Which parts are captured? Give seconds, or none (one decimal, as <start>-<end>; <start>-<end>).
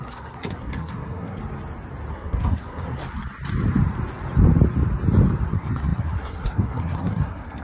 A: 1.4-2.1; 3.0-5.5